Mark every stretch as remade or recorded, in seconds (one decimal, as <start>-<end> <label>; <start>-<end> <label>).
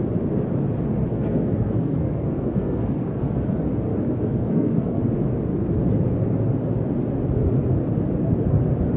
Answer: 0.0-1.1 recorded; 1.1-3.4 remade; 3.4-3.9 recorded; 3.9-5.0 remade; 5.0-9.0 recorded